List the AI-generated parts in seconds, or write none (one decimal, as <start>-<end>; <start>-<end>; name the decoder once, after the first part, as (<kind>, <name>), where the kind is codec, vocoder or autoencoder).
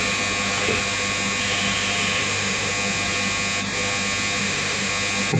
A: 2.2-2.7 (autoencoder, DAC-VAE); 4.4-4.9